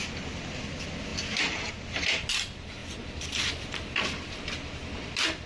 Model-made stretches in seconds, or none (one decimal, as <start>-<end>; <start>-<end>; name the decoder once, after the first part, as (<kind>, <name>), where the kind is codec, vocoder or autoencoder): none